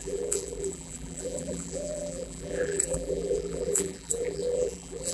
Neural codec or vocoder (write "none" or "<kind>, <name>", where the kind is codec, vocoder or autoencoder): vocoder, BigVGAN v2